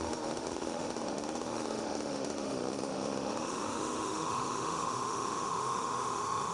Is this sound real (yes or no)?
no